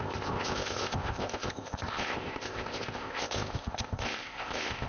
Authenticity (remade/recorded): remade